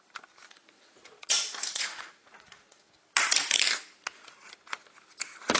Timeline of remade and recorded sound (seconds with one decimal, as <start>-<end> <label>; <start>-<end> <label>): 0.0-0.6 recorded; 0.6-2.9 remade; 2.9-5.6 recorded